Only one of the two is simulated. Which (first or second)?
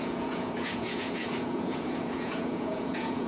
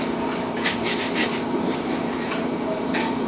first